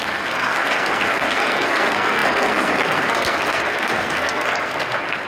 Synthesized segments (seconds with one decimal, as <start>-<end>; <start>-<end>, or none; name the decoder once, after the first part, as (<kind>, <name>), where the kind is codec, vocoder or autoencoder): 0.0-5.3 (codec, SNAC)